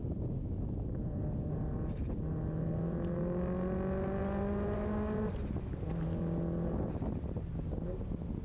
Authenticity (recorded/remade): recorded